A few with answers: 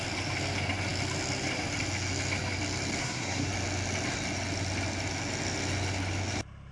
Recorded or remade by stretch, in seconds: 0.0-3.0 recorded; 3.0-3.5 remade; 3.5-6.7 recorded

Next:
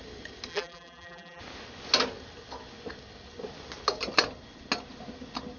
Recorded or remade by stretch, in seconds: 0.0-0.5 recorded; 0.5-1.4 remade; 1.4-5.6 recorded

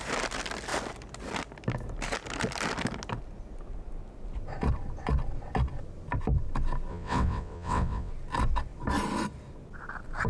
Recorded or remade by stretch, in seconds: 0.0-6.9 recorded; 6.9-8.1 remade; 8.1-10.3 recorded